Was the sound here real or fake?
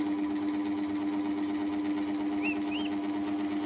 real